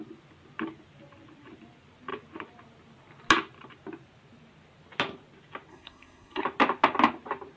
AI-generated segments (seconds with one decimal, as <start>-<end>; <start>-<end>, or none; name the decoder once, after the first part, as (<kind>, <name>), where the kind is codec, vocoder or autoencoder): 5.7-6.4 (codec, SNAC)